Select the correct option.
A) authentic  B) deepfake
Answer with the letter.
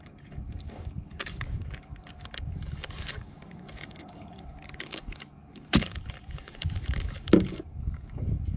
B